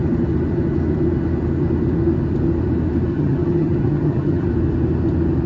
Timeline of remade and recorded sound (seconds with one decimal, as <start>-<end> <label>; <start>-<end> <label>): 0.0-3.1 recorded; 3.1-4.5 remade; 4.5-5.5 recorded

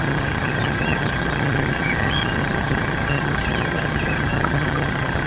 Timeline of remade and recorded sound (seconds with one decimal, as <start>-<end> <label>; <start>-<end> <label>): 0.0-5.3 remade

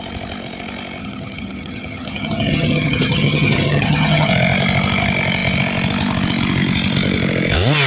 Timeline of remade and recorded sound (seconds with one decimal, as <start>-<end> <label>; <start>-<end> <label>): 0.0-1.0 recorded; 1.0-4.3 remade; 4.3-7.9 recorded